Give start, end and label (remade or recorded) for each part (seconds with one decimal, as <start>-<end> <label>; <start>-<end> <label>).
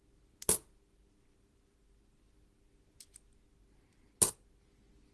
0.0-5.1 recorded